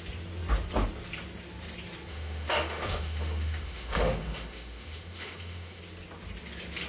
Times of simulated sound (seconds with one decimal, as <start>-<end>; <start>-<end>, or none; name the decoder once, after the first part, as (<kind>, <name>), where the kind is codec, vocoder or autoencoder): 2.1-5.8 (autoencoder, DAC-VAE)